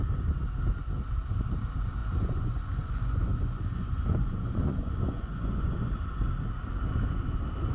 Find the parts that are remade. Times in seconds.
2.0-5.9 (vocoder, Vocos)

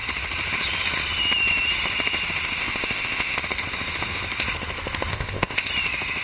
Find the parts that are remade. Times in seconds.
2.6-3.4 (codec, ZipCodec); 5.1-5.7

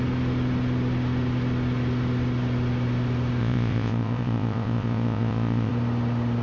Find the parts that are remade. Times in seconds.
3.4-5.7 (vocoder, Vocos)

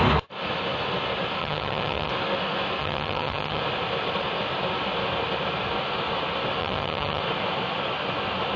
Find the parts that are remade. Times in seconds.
1.4-2.1 (vocoder, HiFi-GAN); 2.8-3.6; 6.6-7.2